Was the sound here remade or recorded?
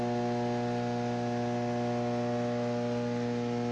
recorded